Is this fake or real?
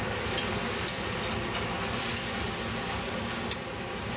real